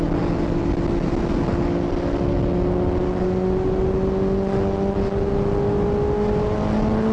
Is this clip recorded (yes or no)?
yes